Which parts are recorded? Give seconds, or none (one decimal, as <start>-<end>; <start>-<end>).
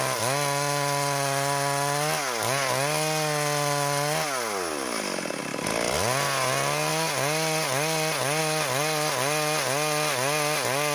0.0-10.9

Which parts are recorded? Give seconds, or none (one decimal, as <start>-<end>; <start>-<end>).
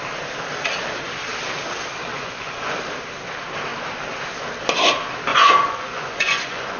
0.0-2.1; 2.8-5.3